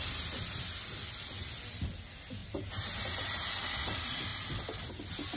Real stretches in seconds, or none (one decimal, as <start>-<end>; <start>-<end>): 0.0-2.4; 3.5-5.4